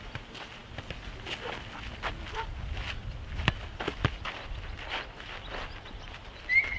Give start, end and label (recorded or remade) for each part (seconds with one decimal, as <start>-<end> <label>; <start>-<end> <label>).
0.0-6.8 recorded